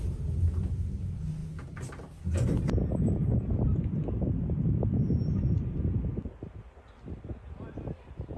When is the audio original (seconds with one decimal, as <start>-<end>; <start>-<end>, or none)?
0.0-8.4